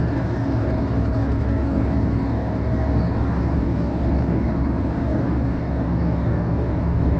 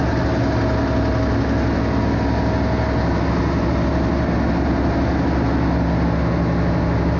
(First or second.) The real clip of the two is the second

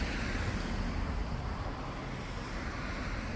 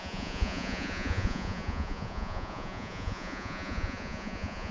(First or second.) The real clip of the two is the first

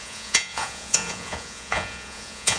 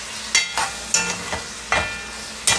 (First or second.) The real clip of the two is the second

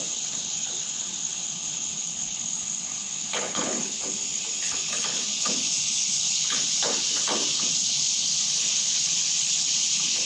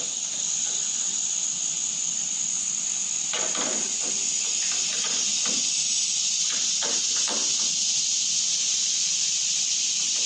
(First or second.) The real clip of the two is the second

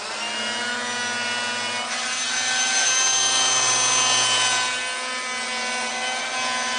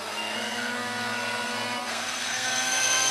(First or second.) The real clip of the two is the first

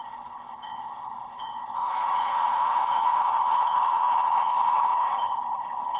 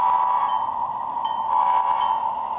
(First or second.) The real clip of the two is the second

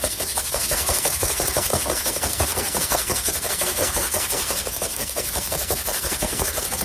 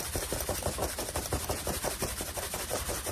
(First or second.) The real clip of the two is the second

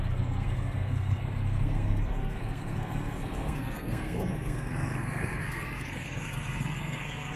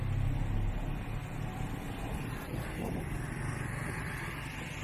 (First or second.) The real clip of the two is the second